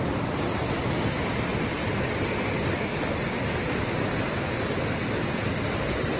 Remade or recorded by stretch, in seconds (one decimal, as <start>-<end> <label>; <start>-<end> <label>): 0.0-1.5 remade; 1.5-4.8 recorded; 4.8-6.2 remade